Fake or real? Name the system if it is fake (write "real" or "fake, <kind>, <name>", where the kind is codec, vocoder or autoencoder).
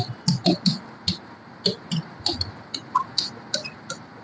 real